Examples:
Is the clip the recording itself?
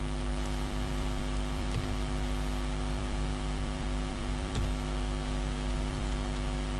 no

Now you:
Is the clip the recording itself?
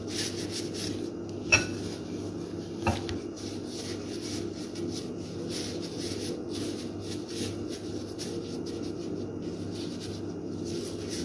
yes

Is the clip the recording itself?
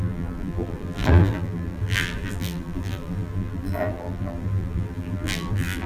no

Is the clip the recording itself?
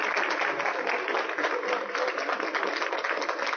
yes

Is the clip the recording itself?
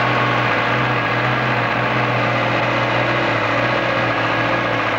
yes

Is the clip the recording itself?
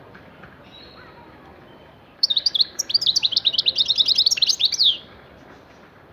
no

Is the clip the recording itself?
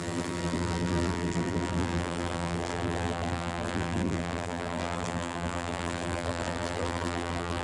no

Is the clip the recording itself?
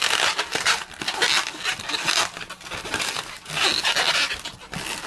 yes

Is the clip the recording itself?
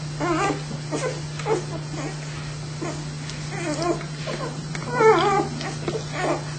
yes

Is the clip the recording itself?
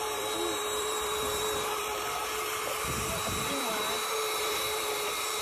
no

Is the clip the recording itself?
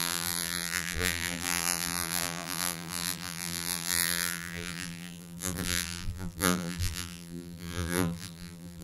no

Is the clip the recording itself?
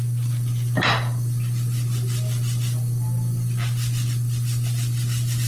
yes